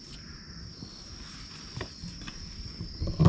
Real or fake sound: real